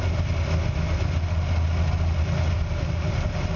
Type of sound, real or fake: real